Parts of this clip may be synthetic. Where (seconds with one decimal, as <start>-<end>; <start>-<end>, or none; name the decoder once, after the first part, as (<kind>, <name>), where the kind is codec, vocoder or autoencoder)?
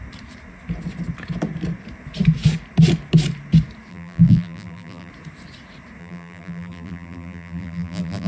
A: 3.9-5.1 (vocoder, BigVGAN v2); 6.0-8.3